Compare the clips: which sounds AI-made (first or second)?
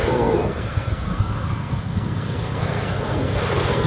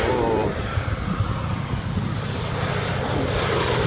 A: first